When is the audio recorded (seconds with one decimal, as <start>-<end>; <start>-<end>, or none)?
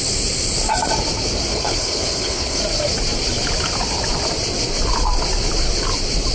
0.0-1.5; 2.6-6.3